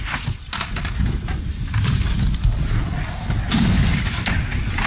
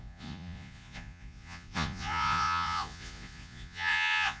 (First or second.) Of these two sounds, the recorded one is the first